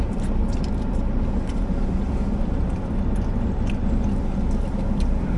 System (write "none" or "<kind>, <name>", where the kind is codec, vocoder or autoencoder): vocoder, BigVGAN v2